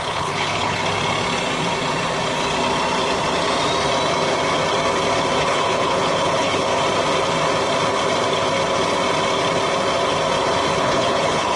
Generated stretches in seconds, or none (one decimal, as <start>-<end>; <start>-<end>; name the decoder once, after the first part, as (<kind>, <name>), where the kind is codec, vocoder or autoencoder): 0.0-0.8 (codec, HILCodec); 5.4-6.7; 10.8-11.6